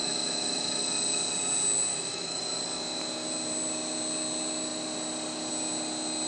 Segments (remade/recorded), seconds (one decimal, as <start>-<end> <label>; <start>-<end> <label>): 0.0-0.8 remade; 0.8-1.9 recorded; 1.9-2.4 remade; 2.4-6.3 recorded